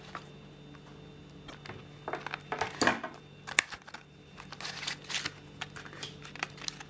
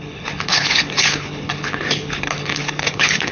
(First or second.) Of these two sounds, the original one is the first